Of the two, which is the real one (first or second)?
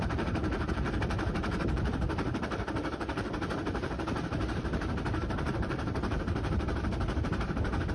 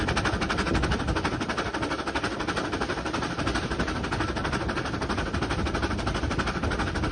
second